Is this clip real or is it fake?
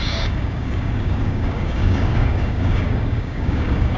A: fake